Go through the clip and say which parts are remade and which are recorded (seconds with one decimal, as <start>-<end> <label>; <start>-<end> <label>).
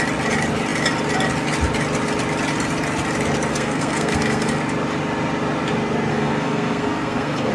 0.0-3.5 recorded; 3.5-4.5 remade; 4.5-6.1 recorded; 6.1-7.5 remade